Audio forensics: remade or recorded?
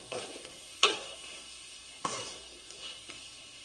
remade